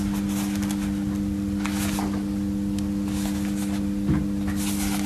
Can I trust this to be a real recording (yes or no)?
yes